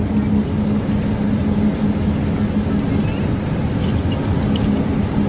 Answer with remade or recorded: recorded